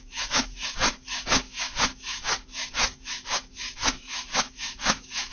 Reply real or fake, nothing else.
fake